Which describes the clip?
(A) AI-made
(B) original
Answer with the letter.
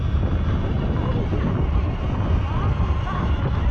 B